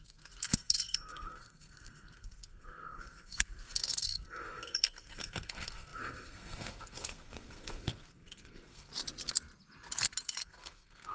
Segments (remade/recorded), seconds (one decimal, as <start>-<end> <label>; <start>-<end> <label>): 0.0-8.9 remade; 8.9-10.4 recorded; 10.4-11.1 remade